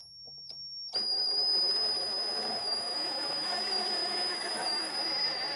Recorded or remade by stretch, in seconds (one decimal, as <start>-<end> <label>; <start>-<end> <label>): 0.0-2.6 recorded; 2.6-3.5 remade; 3.5-4.0 recorded; 4.0-4.9 remade; 4.9-5.6 recorded